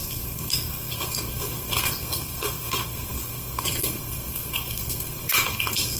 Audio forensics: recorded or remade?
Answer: remade